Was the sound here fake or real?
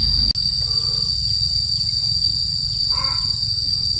real